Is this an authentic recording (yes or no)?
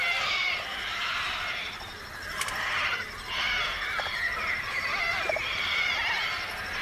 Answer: yes